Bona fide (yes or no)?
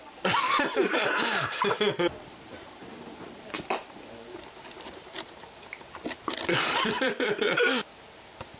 no